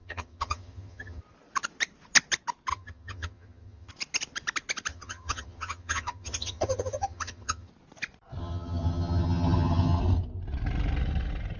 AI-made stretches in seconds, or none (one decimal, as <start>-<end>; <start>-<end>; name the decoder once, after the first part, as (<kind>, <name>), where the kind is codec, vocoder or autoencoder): 0.0-1.2 (vocoder, HiFi-GAN); 2.7-3.9; 4.9-7.7; 8.4-10.0